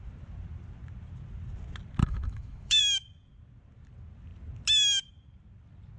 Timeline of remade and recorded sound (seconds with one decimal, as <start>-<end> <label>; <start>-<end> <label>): 0.0-2.0 recorded; 2.0-2.8 remade; 2.8-6.0 recorded

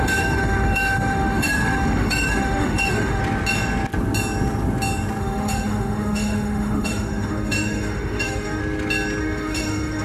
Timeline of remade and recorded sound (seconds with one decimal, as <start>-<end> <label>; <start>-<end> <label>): 0.0-3.2 remade; 3.2-5.2 recorded; 5.2-8.6 remade; 8.6-9.2 recorded; 9.2-10.0 remade